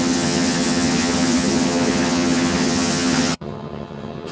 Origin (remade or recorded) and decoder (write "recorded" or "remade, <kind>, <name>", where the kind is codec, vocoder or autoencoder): remade, vocoder, HiFi-GAN